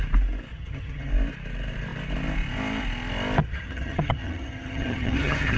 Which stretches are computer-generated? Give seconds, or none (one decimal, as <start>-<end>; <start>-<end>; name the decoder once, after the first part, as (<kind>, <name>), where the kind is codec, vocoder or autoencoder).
0.5-1.1 (vocoder, HiFi-GAN); 3.4-5.6